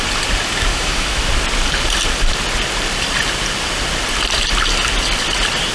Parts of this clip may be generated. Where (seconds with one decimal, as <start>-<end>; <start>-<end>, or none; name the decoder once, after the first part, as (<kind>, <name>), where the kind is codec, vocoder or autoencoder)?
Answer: 0.7-1.2 (autoencoder, DAC-VAE)